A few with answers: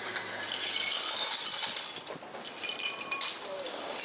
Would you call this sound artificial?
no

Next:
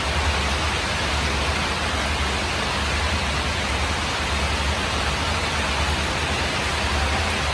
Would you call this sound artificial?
no